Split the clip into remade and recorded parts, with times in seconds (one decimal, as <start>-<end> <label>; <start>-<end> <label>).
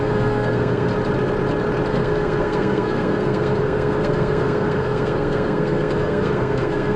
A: 0.0-0.9 remade; 0.9-1.9 recorded; 1.9-7.0 remade